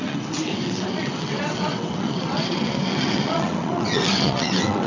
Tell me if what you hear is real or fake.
fake